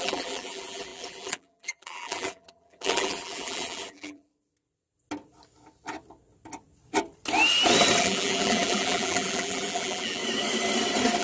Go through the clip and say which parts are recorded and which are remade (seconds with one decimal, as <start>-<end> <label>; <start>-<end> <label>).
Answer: 0.0-4.3 remade; 4.3-8.0 recorded; 8.0-10.2 remade; 10.2-11.2 recorded